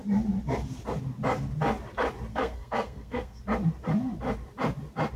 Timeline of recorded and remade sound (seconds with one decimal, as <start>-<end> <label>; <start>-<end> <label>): 0.0-2.3 recorded; 2.3-3.4 remade; 3.4-5.2 recorded